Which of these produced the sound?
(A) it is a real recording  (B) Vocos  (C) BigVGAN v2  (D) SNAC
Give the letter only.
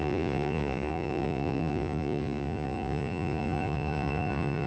B